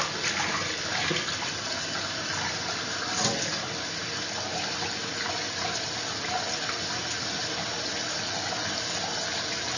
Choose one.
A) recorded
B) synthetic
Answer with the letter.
A